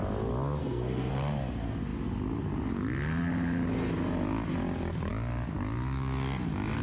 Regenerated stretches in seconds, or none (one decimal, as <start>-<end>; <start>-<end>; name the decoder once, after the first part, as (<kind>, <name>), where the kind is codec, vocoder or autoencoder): 0.6-1.1 (codec, SNAC)